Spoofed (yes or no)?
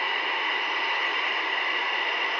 no